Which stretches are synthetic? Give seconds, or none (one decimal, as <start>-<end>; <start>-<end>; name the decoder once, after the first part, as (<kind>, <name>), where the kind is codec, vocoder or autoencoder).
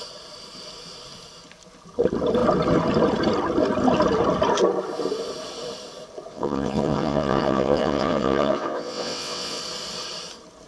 6.3-9.6 (vocoder, WaveNeXt)